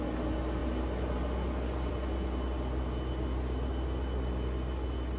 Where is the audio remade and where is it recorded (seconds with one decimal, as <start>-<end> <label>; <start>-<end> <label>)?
0.0-5.2 recorded